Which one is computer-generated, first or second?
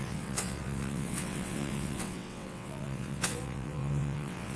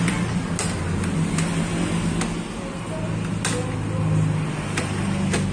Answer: first